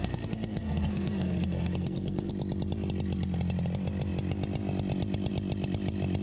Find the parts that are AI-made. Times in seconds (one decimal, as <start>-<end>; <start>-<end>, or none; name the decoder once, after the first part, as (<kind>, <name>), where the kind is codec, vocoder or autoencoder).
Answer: 0.0-2.3 (codec, SNAC)